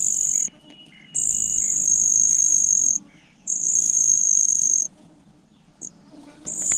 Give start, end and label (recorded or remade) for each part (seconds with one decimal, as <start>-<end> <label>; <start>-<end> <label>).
0.0-1.5 recorded; 1.5-5.3 remade; 5.3-5.9 recorded; 5.9-6.8 remade